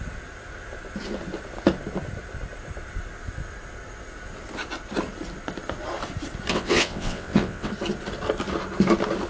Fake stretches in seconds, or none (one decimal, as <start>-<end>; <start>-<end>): 6.5-7.7